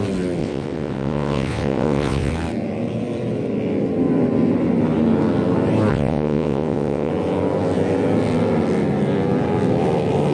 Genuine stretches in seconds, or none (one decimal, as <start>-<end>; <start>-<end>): 0.0-0.4; 2.3-5.9; 7.1-10.3